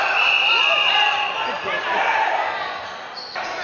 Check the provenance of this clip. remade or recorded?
recorded